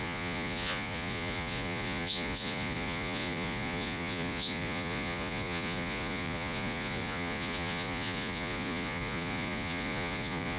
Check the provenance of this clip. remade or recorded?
remade